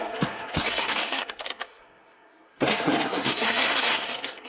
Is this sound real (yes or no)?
no